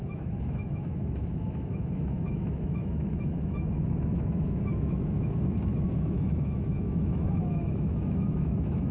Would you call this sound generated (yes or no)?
yes